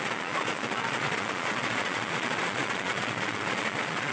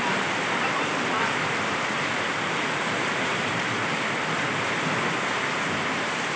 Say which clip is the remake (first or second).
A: first